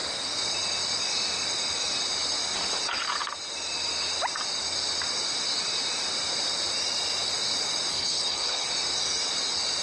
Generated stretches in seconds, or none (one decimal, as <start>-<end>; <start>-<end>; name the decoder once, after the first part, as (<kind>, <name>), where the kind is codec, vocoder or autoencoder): 7.9-8.7 (codec, HILCodec)